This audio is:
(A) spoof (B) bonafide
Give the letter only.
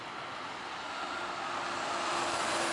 B